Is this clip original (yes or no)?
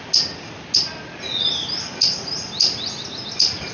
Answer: yes